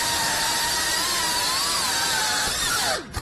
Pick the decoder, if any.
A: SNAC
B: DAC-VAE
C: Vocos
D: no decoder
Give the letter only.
D